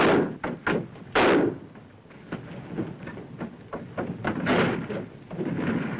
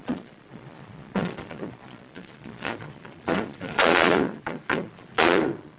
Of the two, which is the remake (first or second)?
second